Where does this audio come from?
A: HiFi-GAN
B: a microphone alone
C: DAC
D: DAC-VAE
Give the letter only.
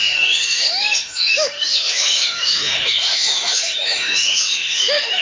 D